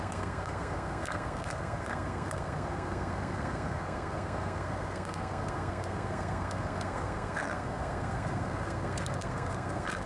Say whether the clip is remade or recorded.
remade